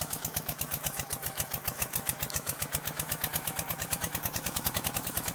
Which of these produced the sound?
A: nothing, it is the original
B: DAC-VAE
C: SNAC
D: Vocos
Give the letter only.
B